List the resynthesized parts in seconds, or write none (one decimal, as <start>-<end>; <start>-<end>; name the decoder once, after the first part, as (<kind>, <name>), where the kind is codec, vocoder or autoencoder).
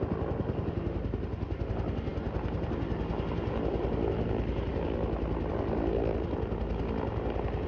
none